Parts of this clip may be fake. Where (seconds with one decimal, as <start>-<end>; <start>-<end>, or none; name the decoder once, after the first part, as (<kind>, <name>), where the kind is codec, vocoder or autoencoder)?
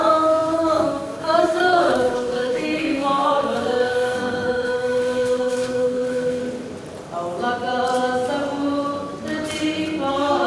0.0-6.4 (codec, SNAC); 10.1-10.5